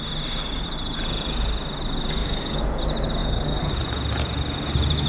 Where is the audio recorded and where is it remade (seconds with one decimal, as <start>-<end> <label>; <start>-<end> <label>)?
0.0-2.2 recorded; 2.2-2.8 remade; 2.8-3.2 recorded; 3.2-3.7 remade; 3.7-5.1 recorded

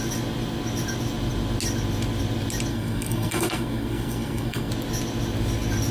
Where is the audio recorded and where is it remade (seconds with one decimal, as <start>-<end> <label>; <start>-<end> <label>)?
0.0-2.7 recorded; 2.7-4.7 remade; 4.7-5.9 recorded

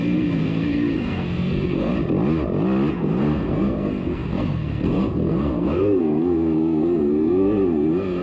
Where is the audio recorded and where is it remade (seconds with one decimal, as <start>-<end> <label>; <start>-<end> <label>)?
0.0-1.9 remade; 1.9-2.9 recorded; 2.9-8.2 remade

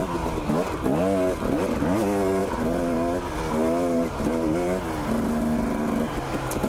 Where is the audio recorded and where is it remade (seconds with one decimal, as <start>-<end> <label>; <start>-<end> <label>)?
0.0-6.7 recorded

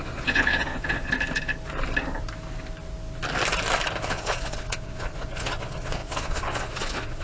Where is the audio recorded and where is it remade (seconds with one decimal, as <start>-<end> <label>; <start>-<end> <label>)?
0.0-1.1 remade; 1.1-4.1 recorded; 4.1-7.2 remade